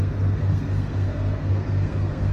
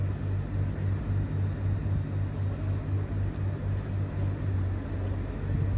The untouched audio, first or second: second